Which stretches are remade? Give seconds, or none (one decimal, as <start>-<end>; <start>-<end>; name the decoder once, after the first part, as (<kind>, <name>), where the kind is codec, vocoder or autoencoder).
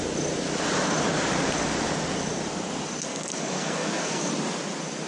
3.1-4.3 (codec, SNAC)